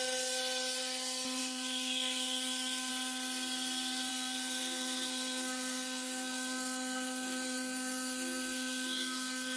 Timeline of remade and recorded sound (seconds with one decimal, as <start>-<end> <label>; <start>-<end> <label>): 0.0-1.4 recorded; 1.4-2.9 remade; 2.9-4.1 recorded; 4.1-9.6 remade